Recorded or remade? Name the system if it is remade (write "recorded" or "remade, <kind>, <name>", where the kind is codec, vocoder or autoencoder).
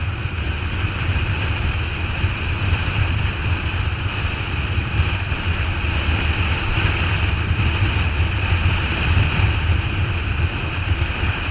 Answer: recorded